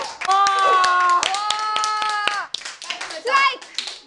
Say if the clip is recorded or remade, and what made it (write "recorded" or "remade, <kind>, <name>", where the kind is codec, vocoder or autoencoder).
recorded